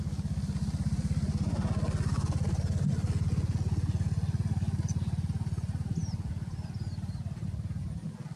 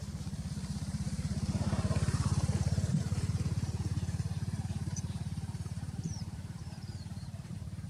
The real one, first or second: first